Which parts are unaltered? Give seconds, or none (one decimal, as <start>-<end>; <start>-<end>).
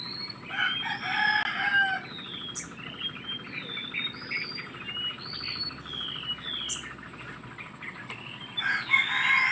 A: 0.0-9.5